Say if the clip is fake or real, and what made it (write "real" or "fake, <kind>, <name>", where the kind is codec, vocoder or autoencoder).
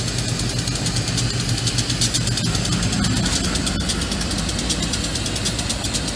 real